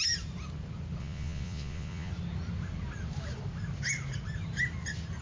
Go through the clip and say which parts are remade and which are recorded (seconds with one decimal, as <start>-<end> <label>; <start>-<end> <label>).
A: 0.0-1.0 recorded; 1.0-2.1 remade; 2.1-5.2 recorded